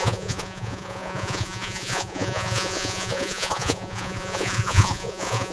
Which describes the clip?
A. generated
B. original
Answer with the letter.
A